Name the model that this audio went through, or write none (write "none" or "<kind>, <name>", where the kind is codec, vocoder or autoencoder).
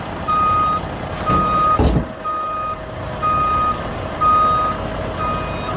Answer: none